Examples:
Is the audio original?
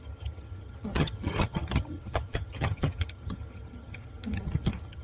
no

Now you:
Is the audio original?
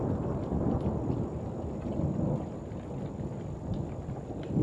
yes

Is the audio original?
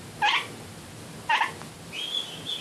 yes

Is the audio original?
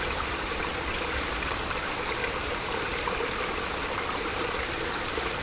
yes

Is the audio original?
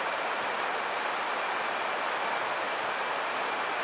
yes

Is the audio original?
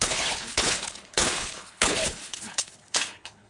no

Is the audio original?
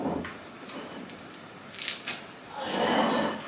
yes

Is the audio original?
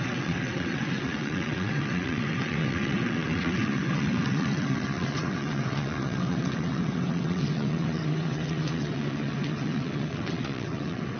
no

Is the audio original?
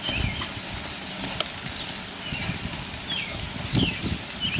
yes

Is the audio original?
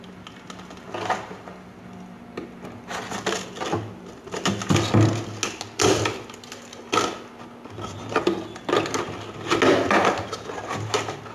yes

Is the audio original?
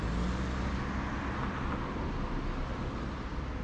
yes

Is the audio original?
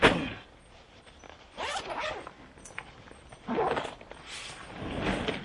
yes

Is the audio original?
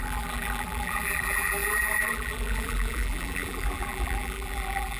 no